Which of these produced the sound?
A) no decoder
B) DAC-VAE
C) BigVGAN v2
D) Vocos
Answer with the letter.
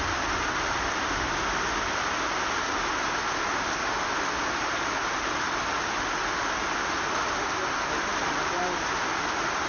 A